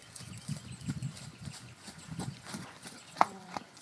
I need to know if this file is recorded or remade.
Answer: remade